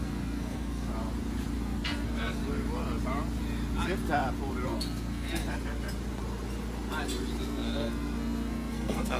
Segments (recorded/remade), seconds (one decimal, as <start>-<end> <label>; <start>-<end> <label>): 0.0-0.9 remade; 0.9-1.6 recorded; 1.6-2.4 remade; 2.4-4.7 recorded; 4.7-5.4 remade; 5.4-7.4 recorded; 7.4-9.2 remade